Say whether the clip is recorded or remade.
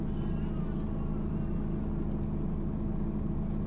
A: recorded